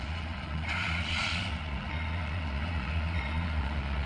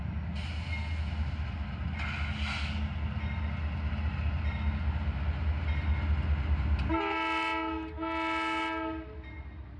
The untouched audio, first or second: second